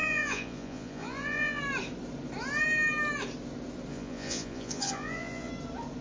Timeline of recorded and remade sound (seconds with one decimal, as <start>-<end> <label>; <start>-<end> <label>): 0.0-1.6 remade; 1.6-3.9 recorded; 3.9-5.5 remade; 5.5-6.0 recorded